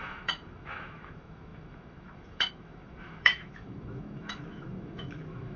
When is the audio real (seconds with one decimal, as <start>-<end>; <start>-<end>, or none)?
none